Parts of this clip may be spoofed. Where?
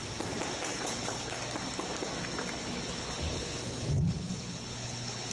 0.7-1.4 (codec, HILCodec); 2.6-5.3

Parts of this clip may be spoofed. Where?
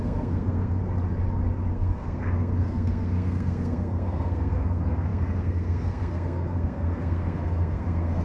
0.0-0.8 (codec, SNAC); 1.7-8.2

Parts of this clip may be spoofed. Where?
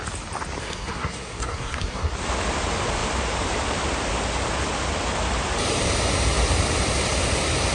0.6-2.1 (codec, SNAC)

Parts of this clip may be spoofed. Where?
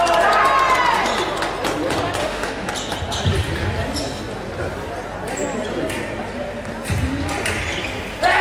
2.2-2.7 (autoencoder, DAC-VAE)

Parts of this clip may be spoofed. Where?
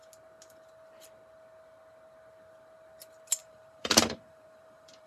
3.4-5.1 (vocoder, BigVGAN v2)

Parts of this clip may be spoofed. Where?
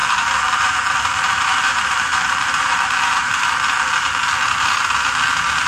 0.0-3.4 (vocoder, BigVGAN v2)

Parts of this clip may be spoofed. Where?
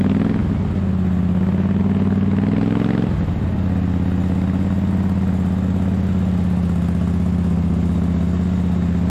none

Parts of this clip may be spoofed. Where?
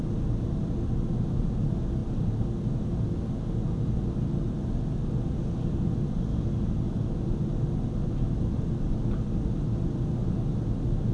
none